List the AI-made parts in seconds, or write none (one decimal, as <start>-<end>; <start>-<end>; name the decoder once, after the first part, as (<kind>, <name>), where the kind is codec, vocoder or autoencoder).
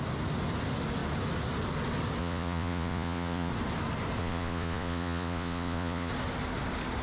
2.2-3.5 (vocoder, Vocos); 4.2-6.1